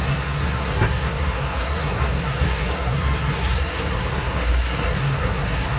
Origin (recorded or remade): remade